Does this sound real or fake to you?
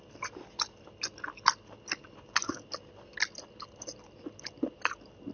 real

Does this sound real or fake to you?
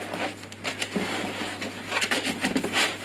real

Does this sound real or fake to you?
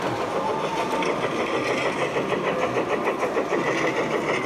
real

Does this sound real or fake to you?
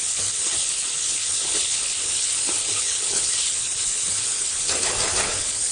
fake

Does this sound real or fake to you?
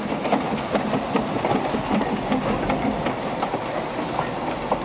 real